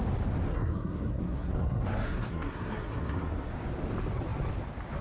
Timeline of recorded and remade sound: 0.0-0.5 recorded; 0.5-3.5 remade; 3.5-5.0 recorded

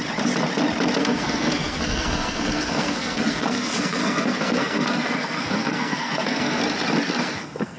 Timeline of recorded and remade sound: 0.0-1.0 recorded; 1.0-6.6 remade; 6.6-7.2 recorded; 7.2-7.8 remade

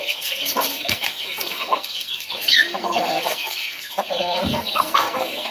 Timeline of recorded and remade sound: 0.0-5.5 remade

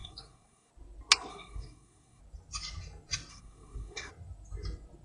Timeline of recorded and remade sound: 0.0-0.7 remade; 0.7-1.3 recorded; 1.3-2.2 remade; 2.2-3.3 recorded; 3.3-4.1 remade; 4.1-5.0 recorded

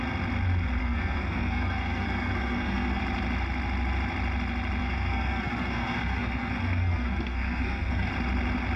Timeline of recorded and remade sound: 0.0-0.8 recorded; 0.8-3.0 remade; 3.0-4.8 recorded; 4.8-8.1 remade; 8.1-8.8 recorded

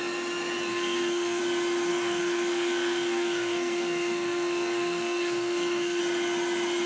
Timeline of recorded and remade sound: 0.0-0.7 recorded; 0.7-1.4 remade; 1.4-1.9 recorded; 1.9-6.0 remade; 6.0-6.9 recorded